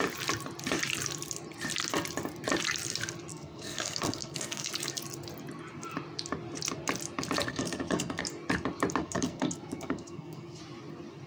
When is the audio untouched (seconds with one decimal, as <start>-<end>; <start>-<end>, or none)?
0.0-3.3; 4.7-7.5; 8.2-9.0; 10.6-11.3